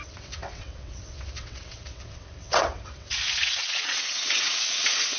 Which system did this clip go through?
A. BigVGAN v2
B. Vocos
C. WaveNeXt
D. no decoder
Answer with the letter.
C